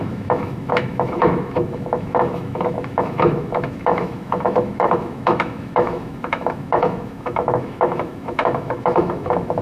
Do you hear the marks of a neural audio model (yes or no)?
yes